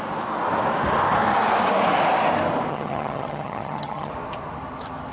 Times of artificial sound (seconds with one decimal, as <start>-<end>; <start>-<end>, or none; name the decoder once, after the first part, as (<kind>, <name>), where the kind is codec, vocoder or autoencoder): 2.7-4.1 (vocoder, HiFi-GAN)